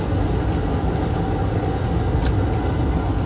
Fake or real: real